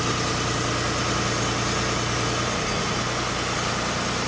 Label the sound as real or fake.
real